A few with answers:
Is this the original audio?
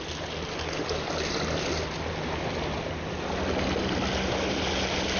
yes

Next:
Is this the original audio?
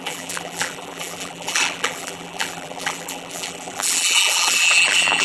no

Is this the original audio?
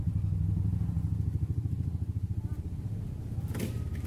yes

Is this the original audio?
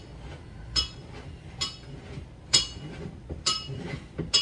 yes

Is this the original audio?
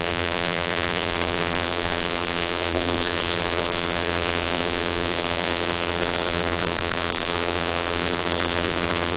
no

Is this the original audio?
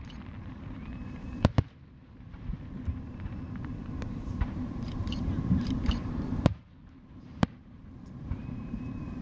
no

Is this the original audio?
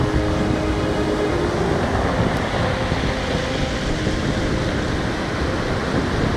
yes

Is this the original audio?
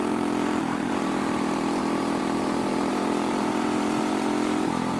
no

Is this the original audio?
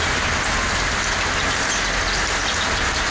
yes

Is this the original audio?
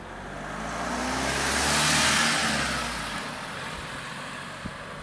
yes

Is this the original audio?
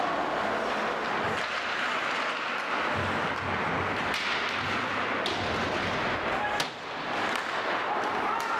yes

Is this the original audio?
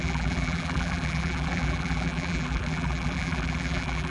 no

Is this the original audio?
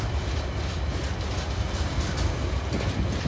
yes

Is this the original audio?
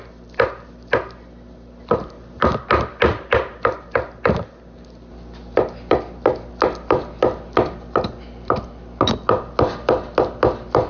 yes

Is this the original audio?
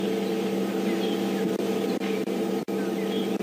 yes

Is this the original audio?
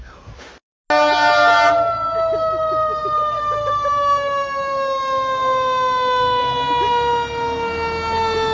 yes